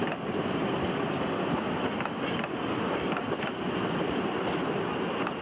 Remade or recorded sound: recorded